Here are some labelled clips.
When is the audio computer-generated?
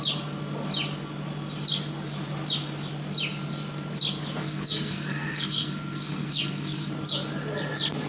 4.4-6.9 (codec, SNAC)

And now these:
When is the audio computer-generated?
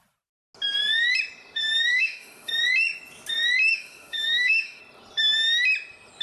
1.9-2.5 (autoencoder, DAC-VAE); 3.7-4.8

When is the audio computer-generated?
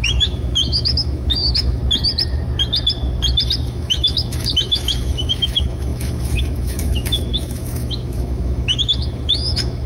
0.0-1.8 (autoencoder, DAC-VAE); 3.7-9.9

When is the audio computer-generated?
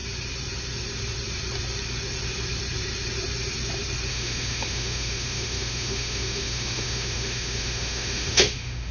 4.1-8.9 (autoencoder, DAC-VAE)